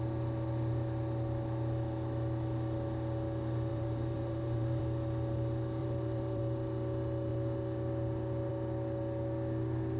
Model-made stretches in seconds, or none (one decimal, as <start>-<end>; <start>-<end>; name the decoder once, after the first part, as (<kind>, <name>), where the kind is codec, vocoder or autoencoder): 3.7-4.8 (vocoder, BigVGAN v2); 5.8-6.4